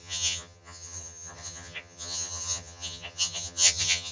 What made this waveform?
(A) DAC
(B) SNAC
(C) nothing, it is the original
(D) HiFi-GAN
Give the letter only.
D